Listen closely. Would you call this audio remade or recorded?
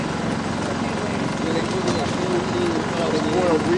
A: recorded